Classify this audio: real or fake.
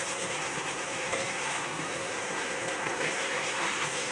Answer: fake